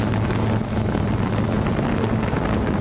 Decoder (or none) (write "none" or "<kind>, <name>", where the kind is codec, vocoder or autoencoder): none